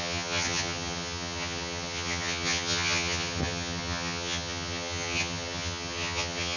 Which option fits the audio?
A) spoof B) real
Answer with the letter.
A